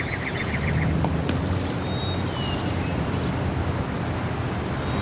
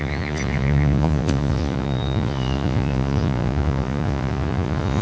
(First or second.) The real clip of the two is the first